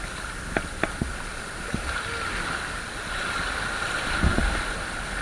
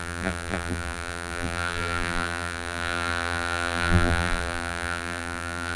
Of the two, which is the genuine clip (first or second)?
first